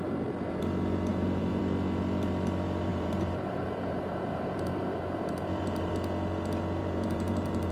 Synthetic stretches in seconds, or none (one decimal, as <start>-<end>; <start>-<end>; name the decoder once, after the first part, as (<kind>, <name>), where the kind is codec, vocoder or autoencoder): 1.1-1.6 (vocoder, BigVGAN v2); 2.9-5.9; 6.8-7.7